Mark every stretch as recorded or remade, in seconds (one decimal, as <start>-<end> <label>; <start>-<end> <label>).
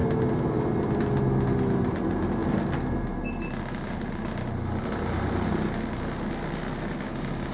0.0-7.5 recorded